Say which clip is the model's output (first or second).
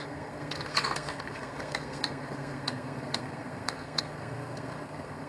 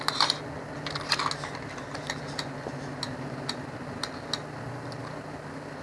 first